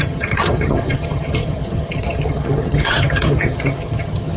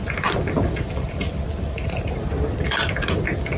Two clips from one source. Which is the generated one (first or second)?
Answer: first